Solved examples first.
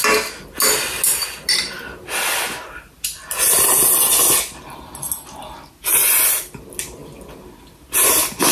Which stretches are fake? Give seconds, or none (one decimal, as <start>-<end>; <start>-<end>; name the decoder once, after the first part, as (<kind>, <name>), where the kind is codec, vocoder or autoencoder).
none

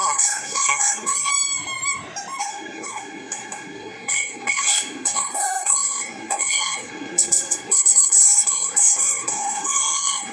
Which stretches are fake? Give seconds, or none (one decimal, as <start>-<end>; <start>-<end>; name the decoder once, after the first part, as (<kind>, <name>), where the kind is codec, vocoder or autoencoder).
0.0-1.3 (codec, SNAC); 2.4-10.3

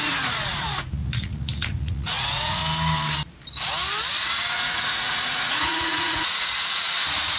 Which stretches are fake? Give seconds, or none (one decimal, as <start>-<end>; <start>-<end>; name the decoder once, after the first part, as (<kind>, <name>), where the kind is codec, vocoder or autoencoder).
0.0-2.6 (vocoder, Vocos); 4.1-7.4

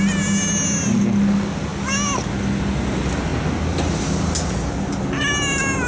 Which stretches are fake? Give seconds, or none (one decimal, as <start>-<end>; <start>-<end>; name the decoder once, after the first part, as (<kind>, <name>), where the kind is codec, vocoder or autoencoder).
none

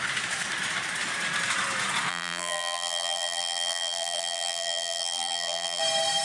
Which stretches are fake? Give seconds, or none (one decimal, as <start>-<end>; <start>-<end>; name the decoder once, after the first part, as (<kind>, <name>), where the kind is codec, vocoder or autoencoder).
2.1-5.8 (vocoder, BigVGAN v2)